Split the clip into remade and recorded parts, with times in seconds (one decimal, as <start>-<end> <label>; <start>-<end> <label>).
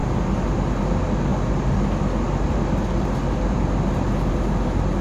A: 0.0-5.0 recorded